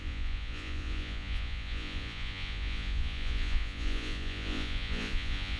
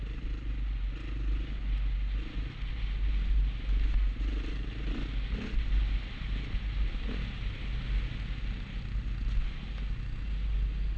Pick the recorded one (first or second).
second